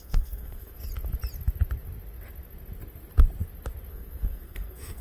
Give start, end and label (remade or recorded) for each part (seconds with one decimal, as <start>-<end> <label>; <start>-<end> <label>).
0.0-0.9 remade; 0.9-3.9 recorded; 3.9-5.0 remade